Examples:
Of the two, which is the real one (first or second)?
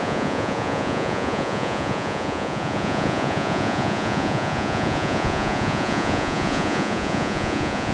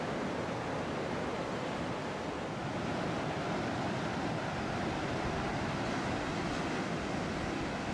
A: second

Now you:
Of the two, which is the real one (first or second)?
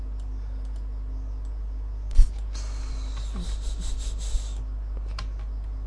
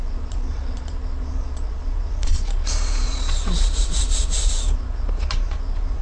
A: first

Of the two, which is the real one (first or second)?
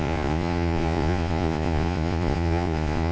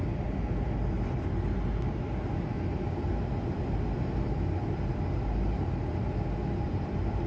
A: second